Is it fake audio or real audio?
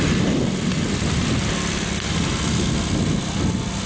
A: real